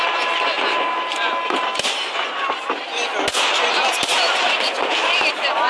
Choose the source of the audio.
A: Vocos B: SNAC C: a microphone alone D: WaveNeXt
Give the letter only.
C